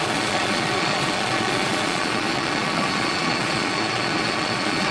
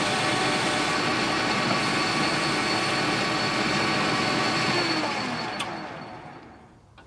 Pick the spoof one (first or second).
first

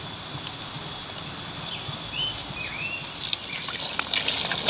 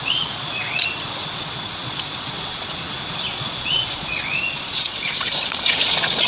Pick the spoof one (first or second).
second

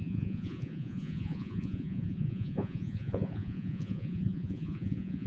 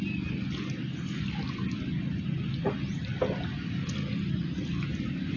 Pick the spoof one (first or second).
first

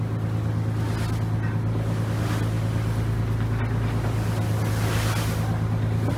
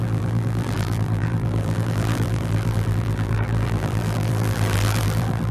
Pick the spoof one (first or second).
second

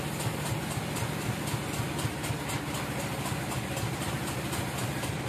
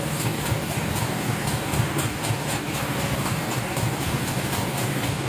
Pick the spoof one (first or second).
second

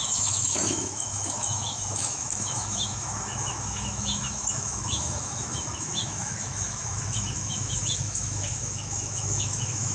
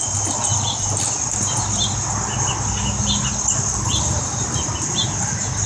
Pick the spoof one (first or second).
first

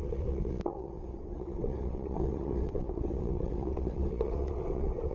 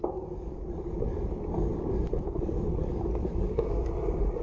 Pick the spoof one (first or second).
first